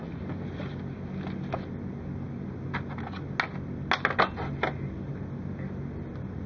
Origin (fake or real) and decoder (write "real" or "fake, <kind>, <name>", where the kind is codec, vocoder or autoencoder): real